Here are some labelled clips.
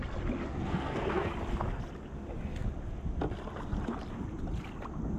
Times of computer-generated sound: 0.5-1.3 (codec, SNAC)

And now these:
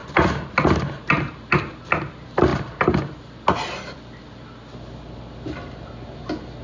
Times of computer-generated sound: none

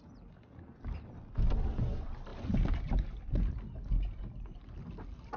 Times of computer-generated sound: none